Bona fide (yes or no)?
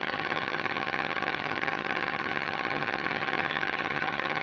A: no